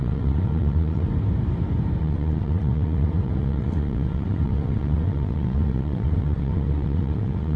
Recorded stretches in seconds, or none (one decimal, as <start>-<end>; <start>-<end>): 1.1-2.0